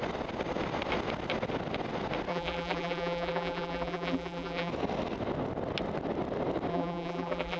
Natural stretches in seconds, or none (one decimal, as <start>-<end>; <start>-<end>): 0.0-2.3; 4.7-6.7